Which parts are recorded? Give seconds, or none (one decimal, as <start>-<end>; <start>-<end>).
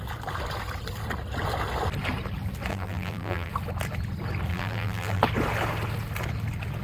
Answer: 0.0-2.7; 3.5-4.5; 5.2-6.8